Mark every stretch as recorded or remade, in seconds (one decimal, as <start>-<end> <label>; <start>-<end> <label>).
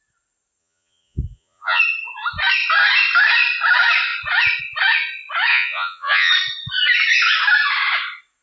0.0-0.6 recorded; 0.6-1.8 remade; 1.8-5.5 recorded; 5.5-6.3 remade; 6.3-8.4 recorded